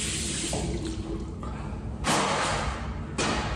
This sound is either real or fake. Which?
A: real